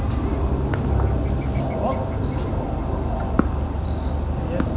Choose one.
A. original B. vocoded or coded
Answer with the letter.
A